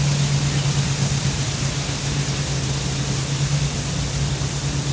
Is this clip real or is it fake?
real